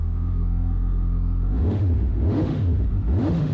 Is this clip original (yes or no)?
no